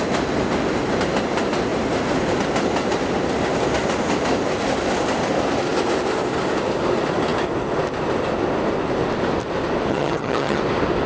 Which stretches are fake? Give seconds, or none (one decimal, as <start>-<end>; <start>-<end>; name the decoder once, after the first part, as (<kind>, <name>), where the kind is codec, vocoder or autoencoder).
9.9-10.6 (vocoder, HiFi-GAN)